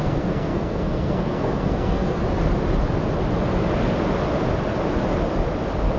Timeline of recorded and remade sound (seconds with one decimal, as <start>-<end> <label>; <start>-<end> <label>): 0.0-2.2 remade; 2.2-6.0 recorded